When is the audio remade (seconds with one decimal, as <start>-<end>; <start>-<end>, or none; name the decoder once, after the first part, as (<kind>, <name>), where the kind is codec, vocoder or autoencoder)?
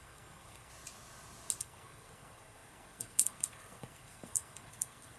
0.0-0.7 (codec, SNAC); 1.6-5.2